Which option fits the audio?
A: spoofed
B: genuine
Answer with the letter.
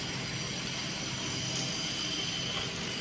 B